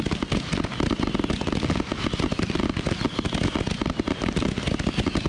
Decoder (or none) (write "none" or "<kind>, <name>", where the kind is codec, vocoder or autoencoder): none